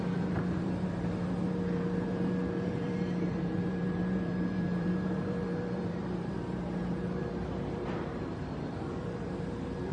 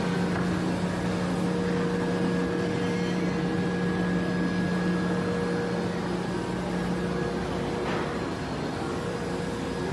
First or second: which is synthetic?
first